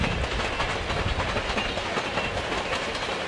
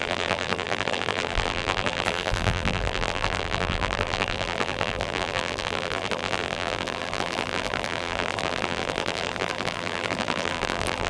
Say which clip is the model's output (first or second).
second